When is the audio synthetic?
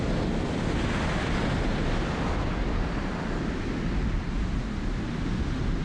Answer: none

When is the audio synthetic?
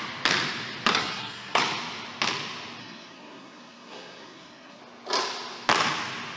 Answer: 0.9-1.6 (codec, SNAC); 2.8-4.8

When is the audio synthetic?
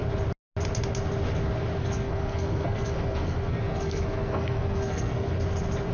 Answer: 1.8-5.3 (codec, SNAC)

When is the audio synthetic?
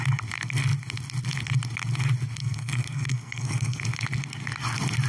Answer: 2.4-3.8 (codec, SNAC)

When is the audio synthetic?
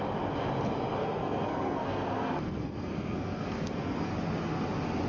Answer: 1.0-4.1 (codec, SNAC)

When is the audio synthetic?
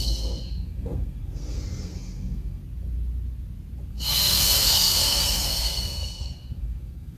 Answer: 0.0-2.6 (codec, SNAC); 3.9-7.2